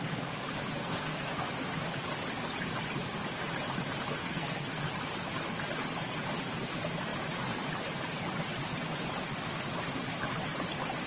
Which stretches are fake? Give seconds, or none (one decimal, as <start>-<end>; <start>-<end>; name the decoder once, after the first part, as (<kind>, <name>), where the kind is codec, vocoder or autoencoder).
0.8-1.5 (codec, SNAC); 4.2-4.9